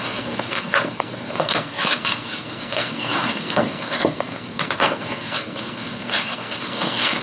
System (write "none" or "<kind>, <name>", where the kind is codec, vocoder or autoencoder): codec, SNAC